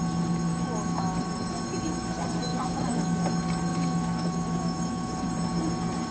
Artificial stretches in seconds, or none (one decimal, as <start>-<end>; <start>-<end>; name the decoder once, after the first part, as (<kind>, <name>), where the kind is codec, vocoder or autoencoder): 0.5-1.2 (autoencoder, DAC-VAE); 2.5-3.2; 3.7-5.2

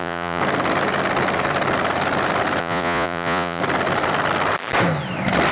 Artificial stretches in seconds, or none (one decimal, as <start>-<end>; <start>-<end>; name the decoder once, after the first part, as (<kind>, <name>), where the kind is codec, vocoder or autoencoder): 0.0-0.4 (vocoder, Vocos); 2.6-3.6

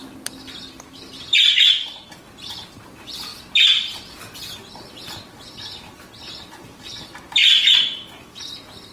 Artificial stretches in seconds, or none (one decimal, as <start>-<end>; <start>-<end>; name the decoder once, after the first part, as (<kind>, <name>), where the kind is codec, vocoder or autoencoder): none

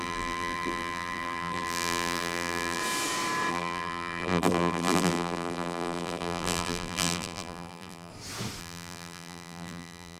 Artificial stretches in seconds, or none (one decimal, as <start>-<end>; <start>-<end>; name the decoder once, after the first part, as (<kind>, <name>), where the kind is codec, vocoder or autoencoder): 0.0-2.8 (vocoder, BigVGAN v2); 3.5-8.1; 8.6-10.2